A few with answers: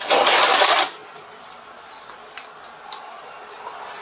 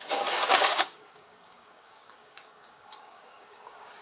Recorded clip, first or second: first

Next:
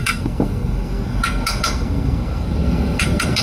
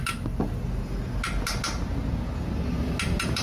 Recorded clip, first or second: second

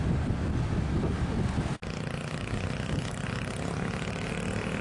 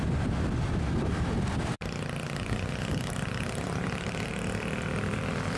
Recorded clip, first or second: first